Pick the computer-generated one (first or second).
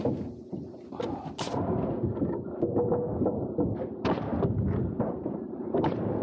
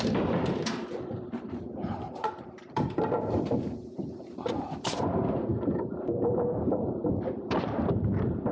second